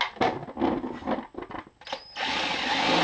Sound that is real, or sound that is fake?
real